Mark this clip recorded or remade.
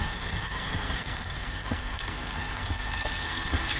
remade